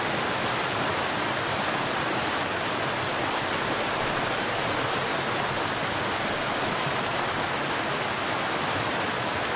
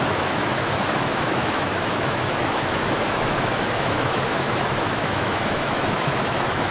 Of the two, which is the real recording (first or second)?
first